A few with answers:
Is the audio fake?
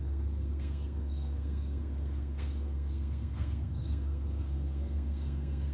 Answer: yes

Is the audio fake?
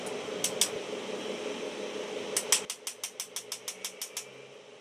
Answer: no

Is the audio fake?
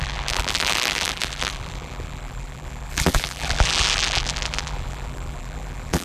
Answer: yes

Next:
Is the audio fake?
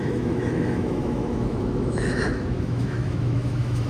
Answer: yes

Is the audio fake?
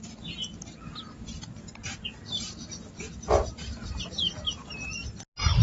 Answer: no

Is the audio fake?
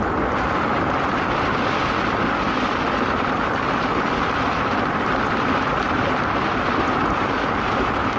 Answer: no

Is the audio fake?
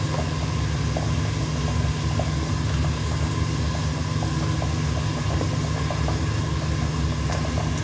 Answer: no